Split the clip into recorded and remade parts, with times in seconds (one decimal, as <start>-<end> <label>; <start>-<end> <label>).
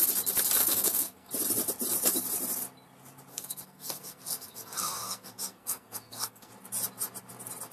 0.0-0.6 recorded; 0.6-1.3 remade; 1.3-3.3 recorded; 3.3-6.5 remade; 6.5-7.7 recorded